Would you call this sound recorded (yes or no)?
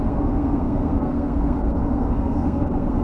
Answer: no